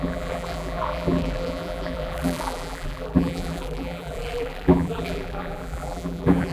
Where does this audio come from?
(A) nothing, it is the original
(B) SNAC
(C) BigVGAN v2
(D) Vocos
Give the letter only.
C